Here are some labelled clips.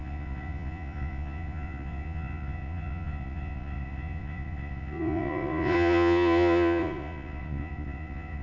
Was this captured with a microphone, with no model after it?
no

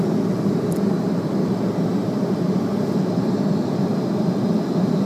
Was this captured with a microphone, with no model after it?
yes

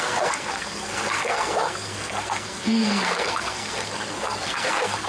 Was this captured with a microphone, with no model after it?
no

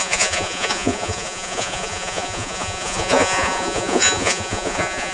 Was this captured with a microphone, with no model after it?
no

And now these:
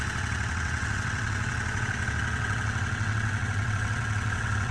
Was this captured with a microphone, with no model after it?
no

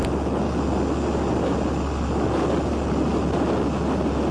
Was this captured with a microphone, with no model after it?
yes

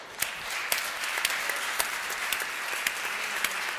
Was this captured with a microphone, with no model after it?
yes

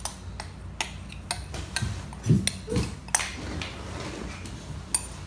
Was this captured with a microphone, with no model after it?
yes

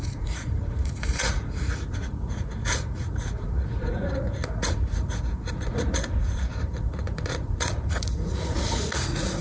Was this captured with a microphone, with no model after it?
no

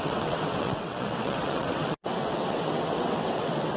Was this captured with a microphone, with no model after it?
no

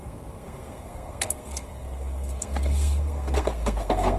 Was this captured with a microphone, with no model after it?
no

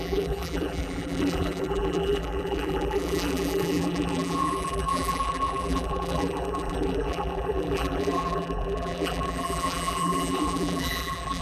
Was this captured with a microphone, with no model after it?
no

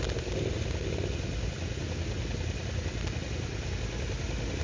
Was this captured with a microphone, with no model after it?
yes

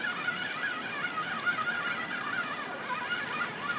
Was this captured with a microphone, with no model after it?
yes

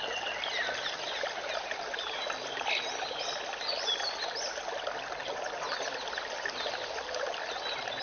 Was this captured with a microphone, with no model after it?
yes